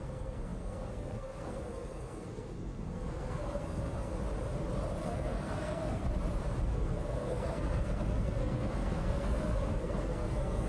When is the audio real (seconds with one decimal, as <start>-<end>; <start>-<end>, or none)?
4.1-5.0; 6.0-6.6